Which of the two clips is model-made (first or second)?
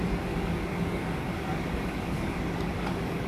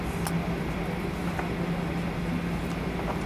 first